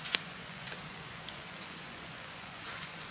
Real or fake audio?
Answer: fake